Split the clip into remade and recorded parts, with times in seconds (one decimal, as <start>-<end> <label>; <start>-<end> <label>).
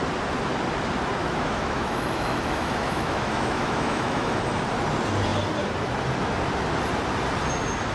0.0-1.2 recorded; 1.2-4.4 remade; 4.4-7.9 recorded